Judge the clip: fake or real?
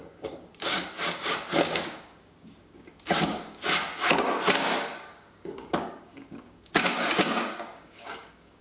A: fake